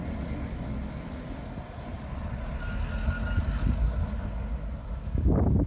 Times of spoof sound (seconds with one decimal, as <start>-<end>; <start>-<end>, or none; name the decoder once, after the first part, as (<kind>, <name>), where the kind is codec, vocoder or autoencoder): none